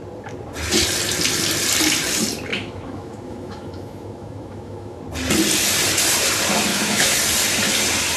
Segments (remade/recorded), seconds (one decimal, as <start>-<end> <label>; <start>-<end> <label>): 0.0-2.5 recorded; 2.5-5.0 remade; 5.0-6.7 recorded; 6.7-7.2 remade; 7.2-8.2 recorded